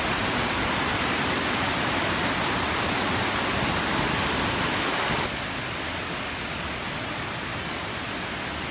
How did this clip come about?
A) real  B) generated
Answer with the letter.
A